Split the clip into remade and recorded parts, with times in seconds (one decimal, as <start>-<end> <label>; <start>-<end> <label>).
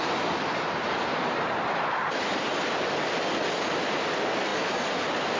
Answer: 0.0-5.4 recorded